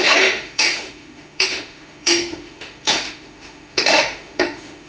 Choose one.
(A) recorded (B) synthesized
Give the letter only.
B